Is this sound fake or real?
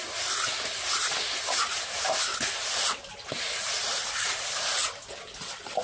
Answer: real